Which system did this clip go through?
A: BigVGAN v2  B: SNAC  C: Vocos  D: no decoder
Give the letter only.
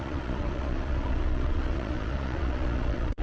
C